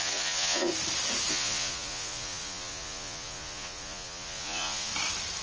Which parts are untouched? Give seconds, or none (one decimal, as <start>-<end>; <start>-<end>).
0.7-1.3; 4.9-5.4